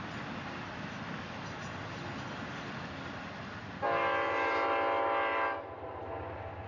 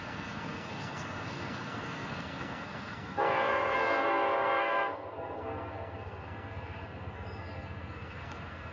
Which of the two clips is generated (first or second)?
second